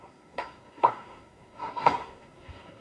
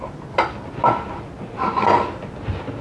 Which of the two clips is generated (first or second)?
first